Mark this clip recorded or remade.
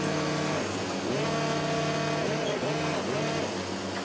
recorded